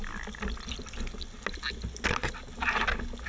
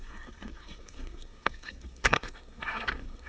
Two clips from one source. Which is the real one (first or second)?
first